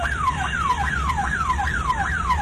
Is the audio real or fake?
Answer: fake